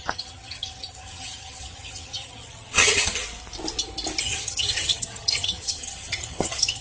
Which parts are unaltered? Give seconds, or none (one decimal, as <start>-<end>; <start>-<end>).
3.2-4.2